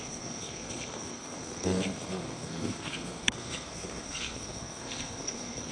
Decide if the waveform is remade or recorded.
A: remade